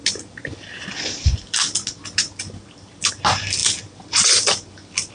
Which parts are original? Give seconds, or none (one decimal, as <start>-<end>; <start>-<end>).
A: 0.0-5.1